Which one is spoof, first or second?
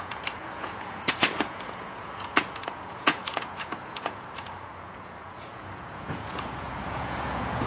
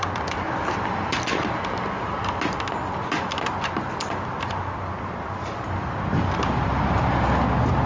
first